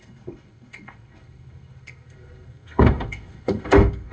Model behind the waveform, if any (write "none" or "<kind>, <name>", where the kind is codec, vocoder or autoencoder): codec, SNAC